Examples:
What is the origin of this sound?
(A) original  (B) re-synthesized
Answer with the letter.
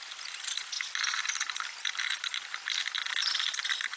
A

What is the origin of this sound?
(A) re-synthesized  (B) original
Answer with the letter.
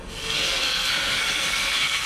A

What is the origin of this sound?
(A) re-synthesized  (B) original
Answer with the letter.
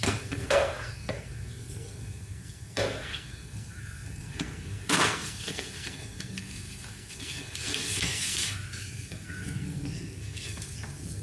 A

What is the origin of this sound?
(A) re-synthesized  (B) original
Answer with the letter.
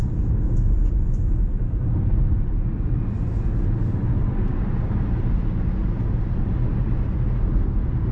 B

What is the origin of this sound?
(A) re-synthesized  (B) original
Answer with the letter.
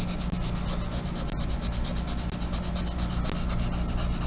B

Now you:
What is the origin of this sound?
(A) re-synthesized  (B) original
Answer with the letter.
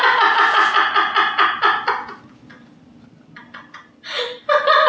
B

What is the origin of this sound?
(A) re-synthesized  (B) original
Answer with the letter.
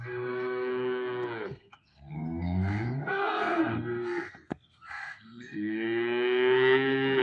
A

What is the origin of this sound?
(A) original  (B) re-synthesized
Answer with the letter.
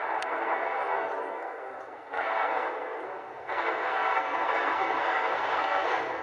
B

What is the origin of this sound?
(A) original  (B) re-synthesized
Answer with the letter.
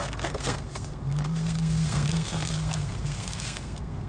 B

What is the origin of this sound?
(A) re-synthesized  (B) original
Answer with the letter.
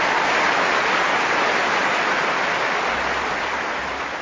B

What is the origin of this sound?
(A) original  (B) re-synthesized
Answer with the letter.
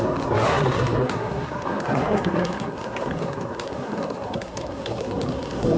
B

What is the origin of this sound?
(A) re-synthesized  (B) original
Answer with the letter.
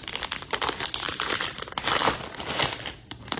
B